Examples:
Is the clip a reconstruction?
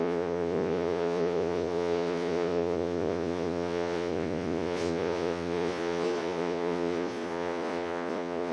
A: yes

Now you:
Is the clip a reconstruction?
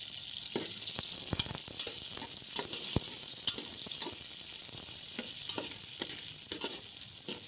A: no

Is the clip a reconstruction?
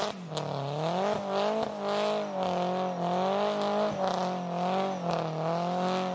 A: no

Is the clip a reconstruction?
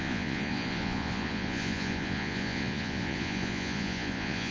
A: yes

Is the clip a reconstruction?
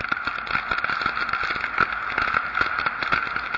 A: no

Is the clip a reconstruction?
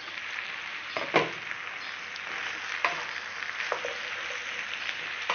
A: no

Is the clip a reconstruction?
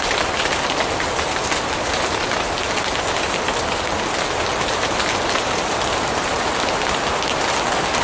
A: no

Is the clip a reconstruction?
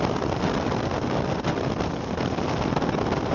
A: no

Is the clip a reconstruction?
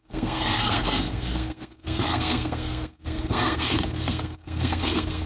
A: yes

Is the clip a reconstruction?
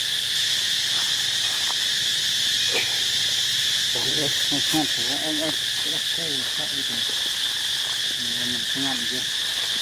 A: no